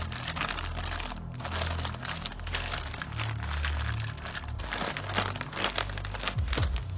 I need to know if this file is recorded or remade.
recorded